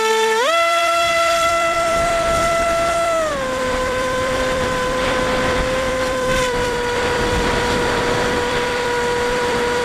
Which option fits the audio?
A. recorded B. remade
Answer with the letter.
B